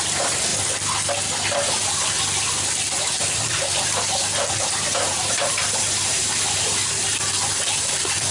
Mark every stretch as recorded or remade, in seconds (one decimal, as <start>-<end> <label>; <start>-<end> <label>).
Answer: 0.0-0.5 remade; 0.5-4.6 recorded; 4.6-6.8 remade; 6.8-8.3 recorded